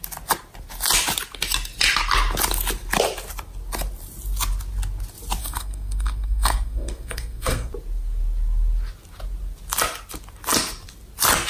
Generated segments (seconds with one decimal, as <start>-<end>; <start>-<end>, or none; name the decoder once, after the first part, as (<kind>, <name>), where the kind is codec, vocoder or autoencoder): 5.4-7.7 (codec, SNAC)